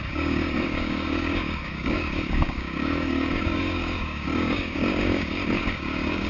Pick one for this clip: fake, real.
fake